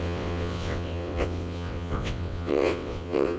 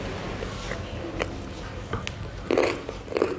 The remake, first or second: first